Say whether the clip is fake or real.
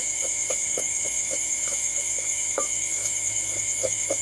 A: fake